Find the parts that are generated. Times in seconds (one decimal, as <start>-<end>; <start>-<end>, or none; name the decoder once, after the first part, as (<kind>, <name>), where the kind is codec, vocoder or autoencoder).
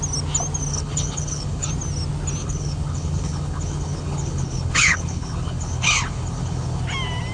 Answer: 0.7-1.7 (codec, HILCodec); 2.4-6.8